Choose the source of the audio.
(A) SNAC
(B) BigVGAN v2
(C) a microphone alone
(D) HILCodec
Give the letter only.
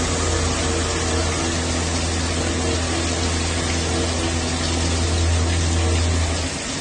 C